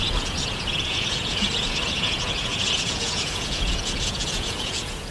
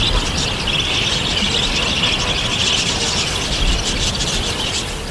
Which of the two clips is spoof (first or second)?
first